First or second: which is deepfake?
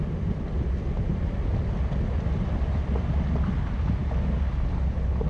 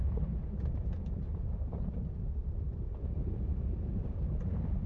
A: second